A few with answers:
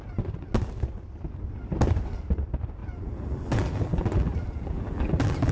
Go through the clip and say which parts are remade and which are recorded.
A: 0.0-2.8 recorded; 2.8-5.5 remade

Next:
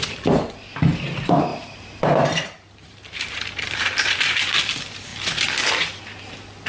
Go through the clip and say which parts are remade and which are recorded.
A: 0.0-1.5 recorded; 1.5-4.6 remade; 4.6-6.7 recorded

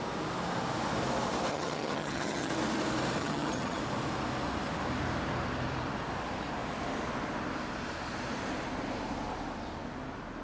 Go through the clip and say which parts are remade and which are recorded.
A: 0.0-1.5 recorded; 1.5-2.5 remade; 2.5-3.2 recorded; 3.2-3.8 remade; 3.8-10.4 recorded

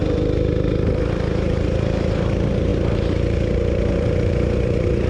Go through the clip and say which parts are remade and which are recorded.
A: 0.0-1.1 recorded; 1.1-5.1 remade

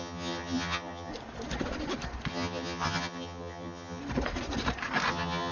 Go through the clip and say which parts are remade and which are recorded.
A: 0.0-1.1 remade; 1.1-2.3 recorded; 2.3-4.0 remade; 4.0-5.1 recorded; 5.1-5.5 remade